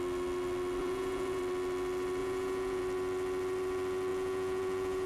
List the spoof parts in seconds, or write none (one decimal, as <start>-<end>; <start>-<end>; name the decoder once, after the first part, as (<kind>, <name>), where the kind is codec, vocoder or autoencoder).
0.8-1.4 (vocoder, Vocos); 2.2-2.8; 4.1-5.1